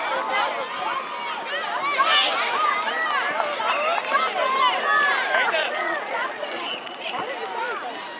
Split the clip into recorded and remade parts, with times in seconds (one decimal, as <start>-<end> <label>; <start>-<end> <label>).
0.0-5.6 recorded; 5.6-7.3 remade; 7.3-8.2 recorded